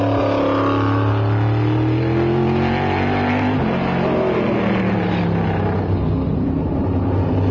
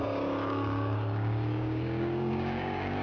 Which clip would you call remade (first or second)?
second